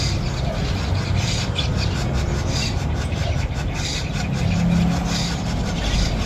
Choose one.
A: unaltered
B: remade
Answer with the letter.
A